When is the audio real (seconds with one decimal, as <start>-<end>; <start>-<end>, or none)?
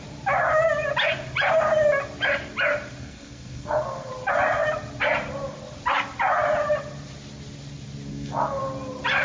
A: 0.0-3.0; 4.1-8.1; 8.6-9.2